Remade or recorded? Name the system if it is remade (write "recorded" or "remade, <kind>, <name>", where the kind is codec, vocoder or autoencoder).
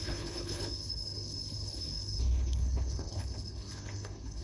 remade, codec, HILCodec